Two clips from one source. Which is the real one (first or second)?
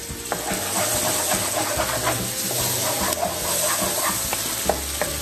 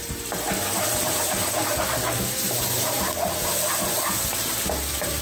first